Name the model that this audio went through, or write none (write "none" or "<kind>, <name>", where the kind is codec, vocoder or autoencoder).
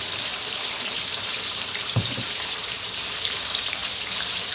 vocoder, BigVGAN v2